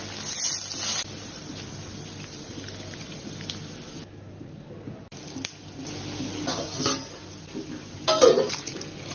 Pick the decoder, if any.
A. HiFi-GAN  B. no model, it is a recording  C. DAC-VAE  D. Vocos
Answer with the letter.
B